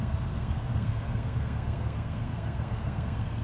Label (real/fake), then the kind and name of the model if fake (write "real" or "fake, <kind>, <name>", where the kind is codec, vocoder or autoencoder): fake, codec, SNAC